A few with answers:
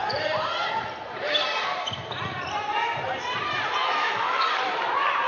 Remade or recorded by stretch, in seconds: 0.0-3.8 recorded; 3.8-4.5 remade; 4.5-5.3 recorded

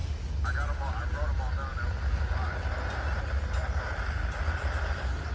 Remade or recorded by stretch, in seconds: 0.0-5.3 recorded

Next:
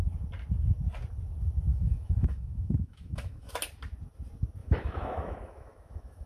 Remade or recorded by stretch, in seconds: 0.0-1.7 recorded; 1.7-3.5 remade; 3.5-4.6 recorded; 4.6-6.3 remade